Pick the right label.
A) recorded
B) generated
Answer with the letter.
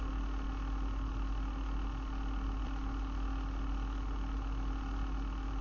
A